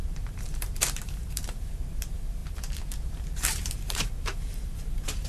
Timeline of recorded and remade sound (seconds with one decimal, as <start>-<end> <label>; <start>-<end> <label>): 0.0-5.3 remade